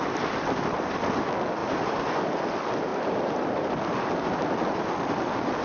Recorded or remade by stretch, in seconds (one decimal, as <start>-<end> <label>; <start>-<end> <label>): 0.0-1.6 recorded; 1.6-2.2 remade; 2.2-5.6 recorded